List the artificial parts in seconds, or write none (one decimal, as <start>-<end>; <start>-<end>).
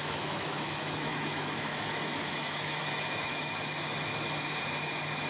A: 0.0-4.1